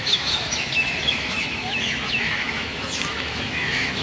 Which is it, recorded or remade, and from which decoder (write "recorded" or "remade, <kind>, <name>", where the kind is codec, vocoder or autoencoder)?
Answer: remade, autoencoder, DAC-VAE